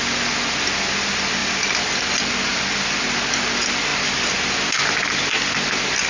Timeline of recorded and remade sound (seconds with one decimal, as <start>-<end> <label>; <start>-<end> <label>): 0.0-2.5 recorded; 2.5-3.0 remade; 3.0-3.9 recorded; 3.9-5.3 remade; 5.3-6.1 recorded